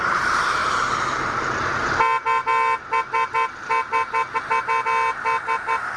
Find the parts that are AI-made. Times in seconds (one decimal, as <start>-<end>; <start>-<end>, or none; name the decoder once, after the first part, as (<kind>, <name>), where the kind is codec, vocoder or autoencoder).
0.6-2.0 (vocoder, BigVGAN v2)